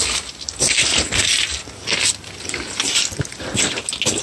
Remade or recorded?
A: recorded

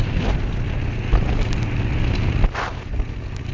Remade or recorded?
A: recorded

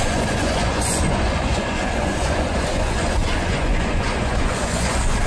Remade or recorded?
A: remade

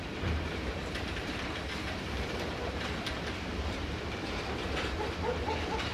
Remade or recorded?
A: remade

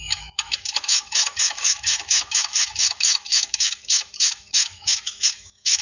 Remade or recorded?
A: remade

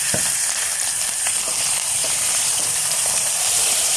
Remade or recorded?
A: remade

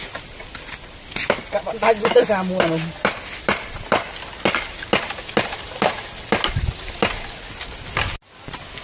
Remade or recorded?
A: recorded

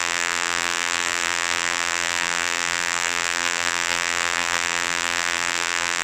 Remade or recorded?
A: remade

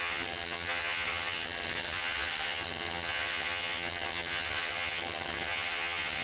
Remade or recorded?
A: remade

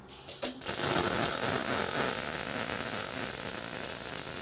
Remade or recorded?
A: recorded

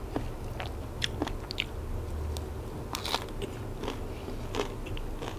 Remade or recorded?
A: recorded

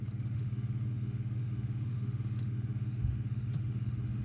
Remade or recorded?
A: remade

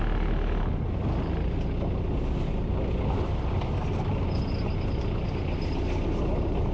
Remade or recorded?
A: recorded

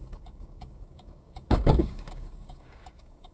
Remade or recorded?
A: remade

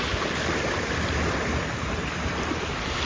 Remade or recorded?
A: recorded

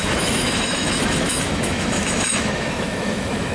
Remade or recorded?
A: remade